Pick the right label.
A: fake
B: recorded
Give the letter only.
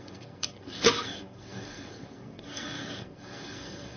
A